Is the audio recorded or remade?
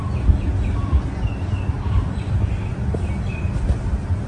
recorded